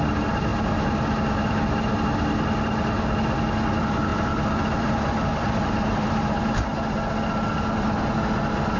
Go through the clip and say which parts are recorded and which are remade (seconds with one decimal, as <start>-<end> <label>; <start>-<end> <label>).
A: 0.0-0.5 remade; 0.5-3.4 recorded; 3.4-6.7 remade; 6.7-8.8 recorded